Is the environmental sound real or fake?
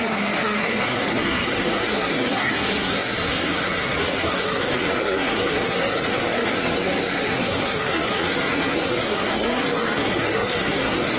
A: fake